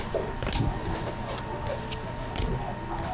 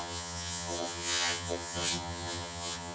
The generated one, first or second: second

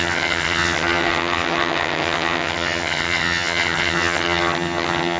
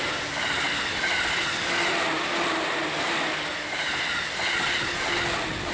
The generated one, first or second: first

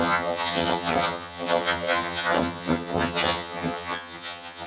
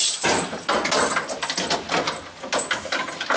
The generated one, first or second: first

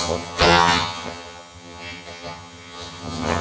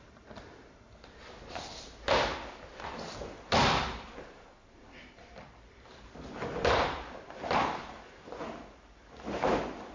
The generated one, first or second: first